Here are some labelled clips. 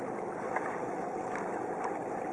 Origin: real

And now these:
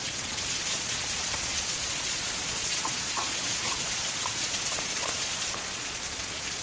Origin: fake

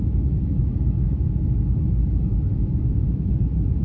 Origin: fake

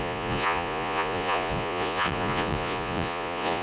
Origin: fake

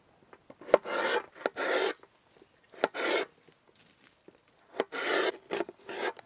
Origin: real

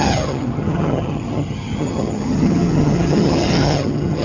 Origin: fake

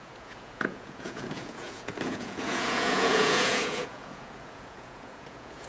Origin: fake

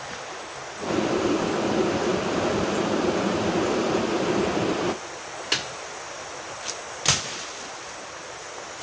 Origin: real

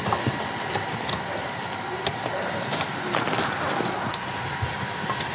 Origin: fake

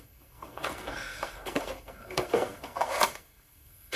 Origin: fake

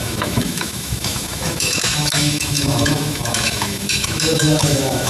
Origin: fake